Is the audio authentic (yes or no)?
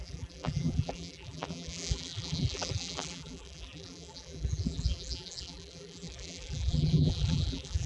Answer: no